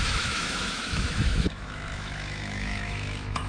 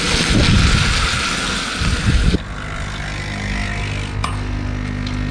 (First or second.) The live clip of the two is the second